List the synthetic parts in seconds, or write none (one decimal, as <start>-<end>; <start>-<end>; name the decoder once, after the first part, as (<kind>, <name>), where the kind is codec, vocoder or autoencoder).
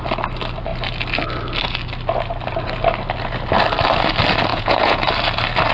4.5-5.1 (vocoder, Vocos)